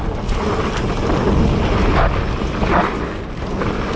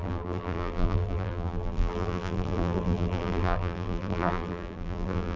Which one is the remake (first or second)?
second